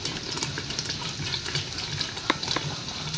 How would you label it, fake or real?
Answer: real